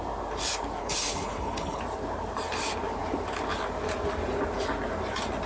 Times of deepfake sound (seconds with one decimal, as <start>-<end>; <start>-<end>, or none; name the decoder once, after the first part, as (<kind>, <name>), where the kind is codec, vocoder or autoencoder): 0.8-1.8 (codec, HILCodec)